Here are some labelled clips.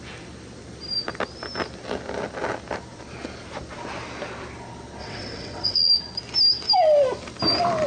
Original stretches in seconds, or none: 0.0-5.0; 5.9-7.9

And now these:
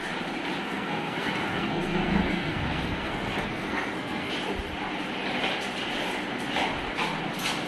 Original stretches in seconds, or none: 0.0-0.6; 4.3-7.7

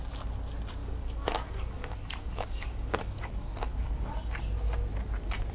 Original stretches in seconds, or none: 0.0-0.8; 4.1-5.5

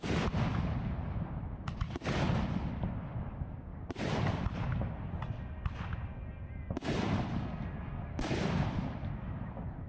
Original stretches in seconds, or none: 0.0-9.9

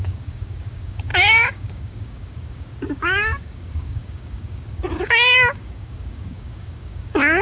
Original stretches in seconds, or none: none

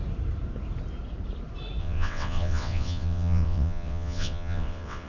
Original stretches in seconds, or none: 0.0-1.8

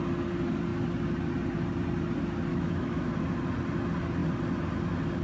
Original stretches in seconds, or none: 0.0-2.5; 3.1-5.2